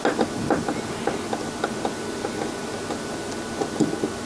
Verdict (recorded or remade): recorded